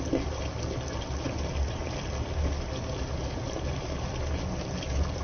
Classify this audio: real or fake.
real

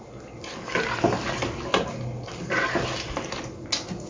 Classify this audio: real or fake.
real